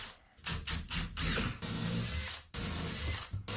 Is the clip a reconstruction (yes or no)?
no